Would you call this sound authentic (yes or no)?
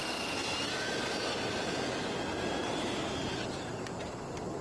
yes